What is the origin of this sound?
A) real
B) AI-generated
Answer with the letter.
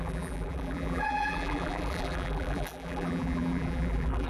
B